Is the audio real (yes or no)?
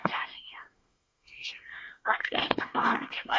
no